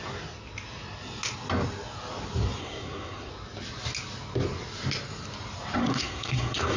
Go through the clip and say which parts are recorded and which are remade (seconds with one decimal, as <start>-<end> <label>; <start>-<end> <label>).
0.0-2.6 recorded; 2.6-3.3 remade; 3.3-5.8 recorded; 5.8-6.8 remade